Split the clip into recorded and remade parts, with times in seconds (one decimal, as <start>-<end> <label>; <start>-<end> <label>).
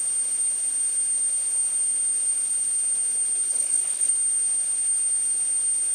0.0-3.5 recorded; 3.5-4.1 remade; 4.1-5.9 recorded